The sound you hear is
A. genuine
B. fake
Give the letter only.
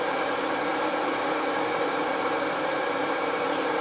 B